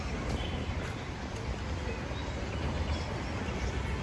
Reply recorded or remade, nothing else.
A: recorded